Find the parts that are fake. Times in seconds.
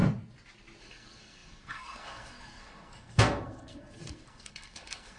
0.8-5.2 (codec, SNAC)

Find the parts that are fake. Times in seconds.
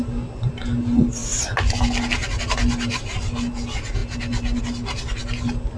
none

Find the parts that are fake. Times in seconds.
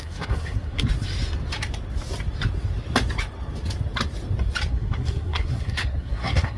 0.0-0.9 (codec, SNAC); 4.7-6.6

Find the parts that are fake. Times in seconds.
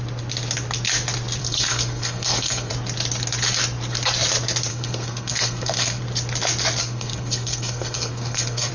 1.4-2.7 (codec, SNAC); 4.7-6.0; 6.8-8.7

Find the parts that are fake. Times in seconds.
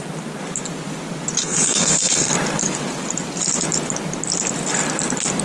1.4-2.3 (codec, SNAC)